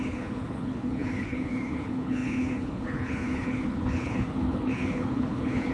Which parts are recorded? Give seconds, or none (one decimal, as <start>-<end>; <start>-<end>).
none